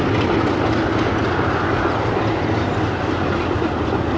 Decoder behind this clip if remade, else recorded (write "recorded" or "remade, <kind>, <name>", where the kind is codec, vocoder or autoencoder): recorded